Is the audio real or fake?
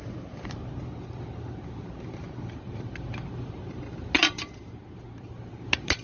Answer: fake